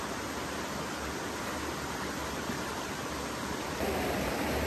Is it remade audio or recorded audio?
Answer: recorded